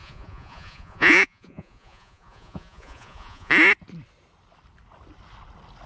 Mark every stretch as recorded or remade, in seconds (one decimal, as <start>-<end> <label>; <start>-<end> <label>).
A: 0.0-3.5 remade; 3.5-5.9 recorded